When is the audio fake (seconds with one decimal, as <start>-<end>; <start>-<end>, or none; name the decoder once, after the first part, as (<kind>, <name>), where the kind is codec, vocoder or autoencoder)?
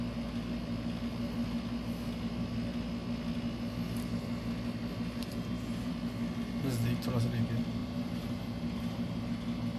5.2-5.9 (vocoder, BigVGAN v2); 7.8-9.2